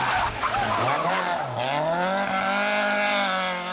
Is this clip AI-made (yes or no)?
no